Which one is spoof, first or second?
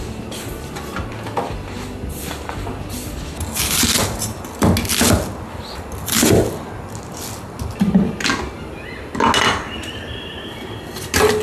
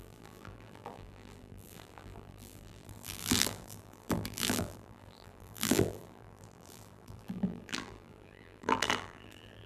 second